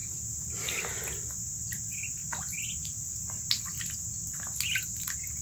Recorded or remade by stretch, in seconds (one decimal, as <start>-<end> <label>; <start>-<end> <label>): 0.0-5.4 recorded